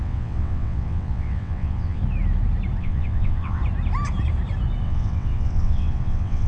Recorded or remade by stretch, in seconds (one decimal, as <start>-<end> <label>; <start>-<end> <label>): 0.0-2.0 remade; 2.0-2.8 recorded; 2.8-3.6 remade; 3.6-4.8 recorded; 4.8-6.5 remade